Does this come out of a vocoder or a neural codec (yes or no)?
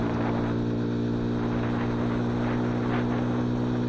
no